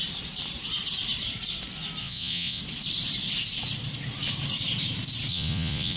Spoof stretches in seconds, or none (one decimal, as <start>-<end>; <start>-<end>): 2.0-2.6; 5.3-6.0